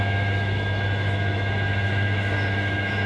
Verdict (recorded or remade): remade